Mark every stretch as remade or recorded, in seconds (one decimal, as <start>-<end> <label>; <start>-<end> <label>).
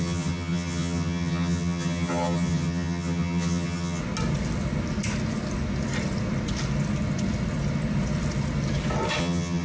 0.0-4.0 remade; 4.0-9.2 recorded; 9.2-9.6 remade